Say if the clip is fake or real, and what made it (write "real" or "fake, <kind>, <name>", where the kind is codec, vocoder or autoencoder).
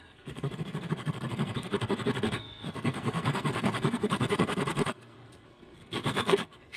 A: fake, codec, SNAC